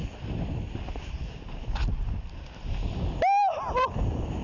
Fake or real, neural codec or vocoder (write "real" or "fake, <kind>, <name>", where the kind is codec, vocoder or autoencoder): real